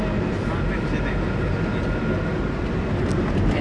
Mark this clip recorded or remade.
recorded